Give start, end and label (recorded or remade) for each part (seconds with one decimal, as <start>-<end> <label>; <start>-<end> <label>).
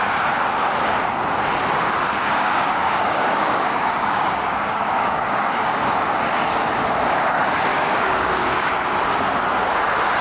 0.0-2.2 recorded; 2.2-5.8 remade; 5.8-7.7 recorded; 7.7-8.7 remade; 8.7-10.2 recorded